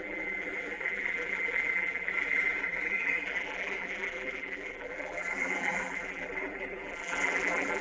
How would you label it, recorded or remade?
remade